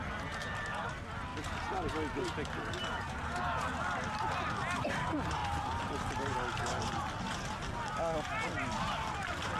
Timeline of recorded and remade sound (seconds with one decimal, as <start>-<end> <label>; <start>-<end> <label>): 0.0-9.6 recorded